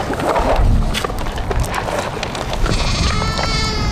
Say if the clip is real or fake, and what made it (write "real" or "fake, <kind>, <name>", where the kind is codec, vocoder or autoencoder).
real